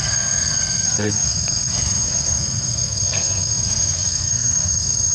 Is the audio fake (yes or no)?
yes